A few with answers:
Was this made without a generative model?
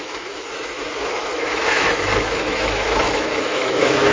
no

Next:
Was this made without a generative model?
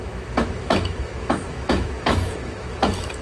no